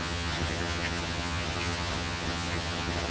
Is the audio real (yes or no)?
no